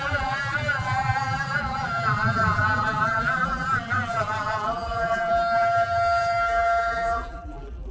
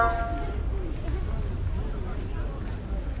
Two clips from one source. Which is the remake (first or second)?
first